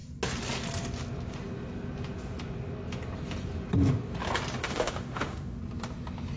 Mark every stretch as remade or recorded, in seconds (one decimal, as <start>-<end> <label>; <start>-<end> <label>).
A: 0.0-4.6 recorded; 4.6-5.6 remade; 5.6-6.4 recorded